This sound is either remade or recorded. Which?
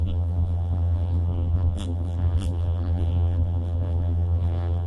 remade